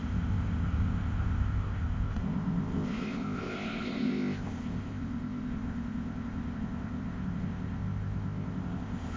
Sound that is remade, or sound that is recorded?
remade